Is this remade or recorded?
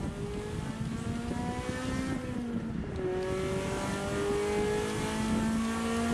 recorded